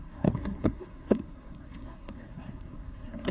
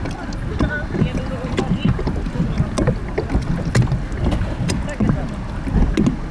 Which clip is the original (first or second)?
second